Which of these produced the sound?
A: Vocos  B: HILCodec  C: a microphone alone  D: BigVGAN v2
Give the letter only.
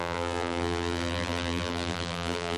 D